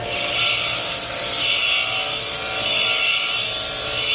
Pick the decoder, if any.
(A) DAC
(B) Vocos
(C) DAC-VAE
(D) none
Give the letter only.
D